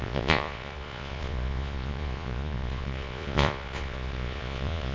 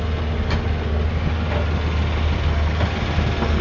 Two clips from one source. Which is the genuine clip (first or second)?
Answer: second